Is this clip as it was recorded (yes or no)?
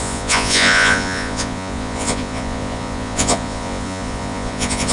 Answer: no